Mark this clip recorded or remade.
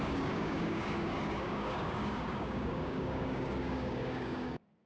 remade